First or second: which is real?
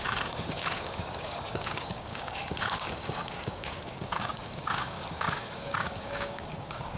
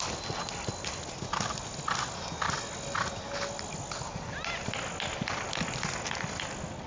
second